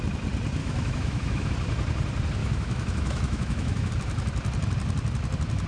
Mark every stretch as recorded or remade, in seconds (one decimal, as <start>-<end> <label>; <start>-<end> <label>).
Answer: 0.0-0.6 recorded; 0.6-1.5 remade; 1.5-2.4 recorded; 2.4-3.9 remade; 3.9-5.7 recorded